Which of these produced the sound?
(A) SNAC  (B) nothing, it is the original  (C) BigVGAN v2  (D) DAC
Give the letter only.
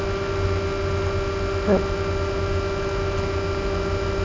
B